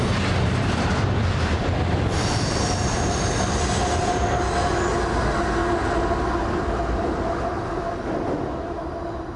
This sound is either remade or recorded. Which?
recorded